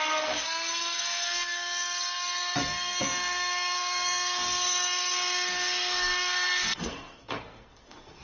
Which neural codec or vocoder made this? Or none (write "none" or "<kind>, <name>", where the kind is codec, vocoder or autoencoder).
codec, SNAC